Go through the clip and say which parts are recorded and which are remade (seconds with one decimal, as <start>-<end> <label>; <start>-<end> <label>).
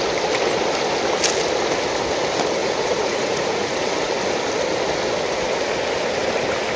0.0-2.6 recorded; 2.6-4.1 remade; 4.1-6.8 recorded